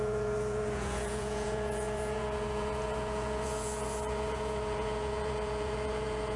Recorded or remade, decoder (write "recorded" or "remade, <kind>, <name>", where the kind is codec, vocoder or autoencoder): remade, vocoder, Vocos